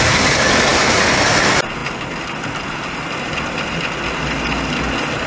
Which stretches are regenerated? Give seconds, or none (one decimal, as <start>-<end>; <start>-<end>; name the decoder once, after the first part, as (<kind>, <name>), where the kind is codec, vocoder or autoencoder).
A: none